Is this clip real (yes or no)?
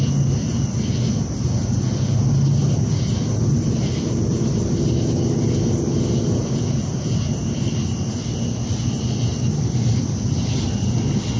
yes